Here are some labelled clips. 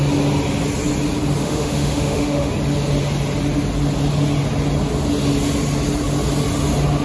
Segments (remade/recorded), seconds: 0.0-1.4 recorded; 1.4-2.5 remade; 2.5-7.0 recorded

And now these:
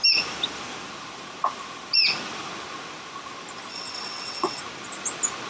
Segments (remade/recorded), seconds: 0.0-3.7 recorded; 3.7-4.6 remade; 4.6-5.5 recorded

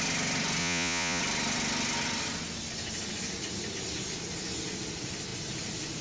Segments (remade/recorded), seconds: 0.0-0.6 recorded; 0.6-1.2 remade; 1.2-6.0 recorded